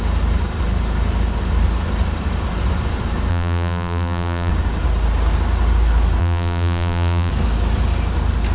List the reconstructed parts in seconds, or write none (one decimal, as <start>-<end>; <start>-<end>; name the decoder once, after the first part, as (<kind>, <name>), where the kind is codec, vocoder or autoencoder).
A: 3.3-4.5 (vocoder, BigVGAN v2); 6.2-7.3